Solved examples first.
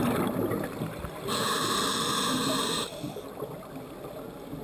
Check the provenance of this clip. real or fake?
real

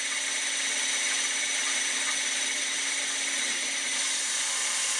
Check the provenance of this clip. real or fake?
real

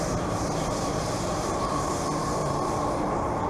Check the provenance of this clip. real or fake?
fake